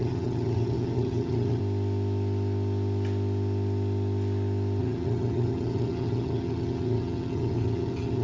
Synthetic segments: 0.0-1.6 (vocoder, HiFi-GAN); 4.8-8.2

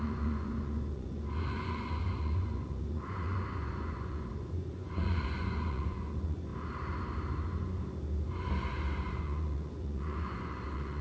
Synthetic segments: 0.0-6.5 (vocoder, Vocos); 9.2-11.0

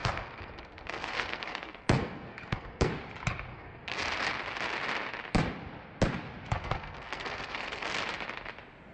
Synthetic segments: 0.0-2.9 (codec, SNAC); 3.5-4.0; 6.6-7.9

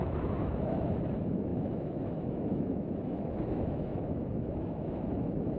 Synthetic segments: 0.0-5.6 (autoencoder, DAC-VAE)

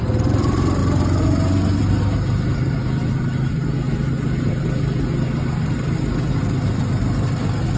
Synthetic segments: none